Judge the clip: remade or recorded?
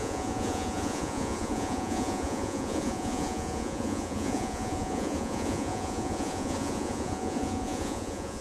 remade